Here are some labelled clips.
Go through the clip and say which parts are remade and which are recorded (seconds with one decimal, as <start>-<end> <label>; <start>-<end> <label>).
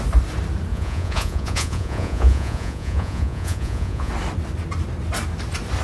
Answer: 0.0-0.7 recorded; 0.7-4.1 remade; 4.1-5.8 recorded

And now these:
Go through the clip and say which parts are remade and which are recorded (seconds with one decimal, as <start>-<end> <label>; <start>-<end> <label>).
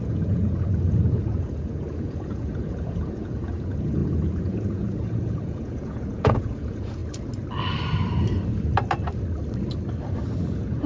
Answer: 0.0-7.0 remade; 7.0-10.5 recorded; 10.5-10.9 remade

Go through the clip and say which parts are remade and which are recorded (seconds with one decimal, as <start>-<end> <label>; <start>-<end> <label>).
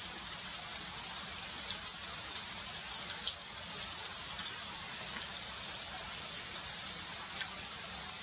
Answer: 0.0-8.2 recorded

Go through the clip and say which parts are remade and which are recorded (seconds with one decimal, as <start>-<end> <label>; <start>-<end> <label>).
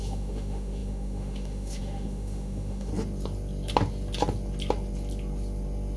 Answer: 0.0-2.9 remade; 2.9-6.0 recorded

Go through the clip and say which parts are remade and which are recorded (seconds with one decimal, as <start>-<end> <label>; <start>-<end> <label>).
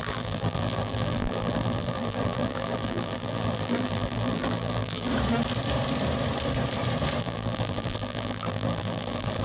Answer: 0.0-5.1 remade; 5.1-7.2 recorded; 7.2-9.4 remade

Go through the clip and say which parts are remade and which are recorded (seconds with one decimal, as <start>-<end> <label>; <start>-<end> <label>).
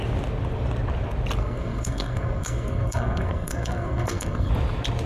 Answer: 0.0-1.4 recorded; 1.4-4.5 remade; 4.5-5.1 recorded